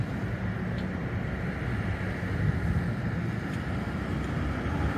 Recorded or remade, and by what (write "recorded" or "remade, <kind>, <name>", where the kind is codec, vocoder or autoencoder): recorded